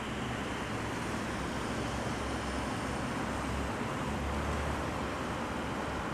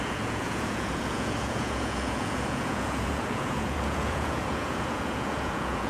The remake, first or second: second